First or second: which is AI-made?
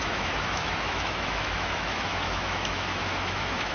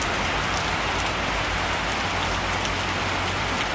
first